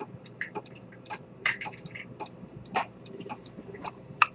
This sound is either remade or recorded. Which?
remade